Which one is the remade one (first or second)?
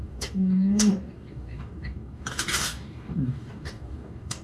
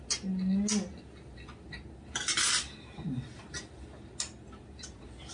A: first